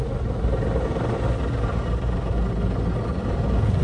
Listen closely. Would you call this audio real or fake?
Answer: real